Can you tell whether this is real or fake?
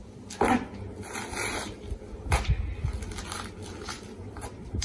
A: real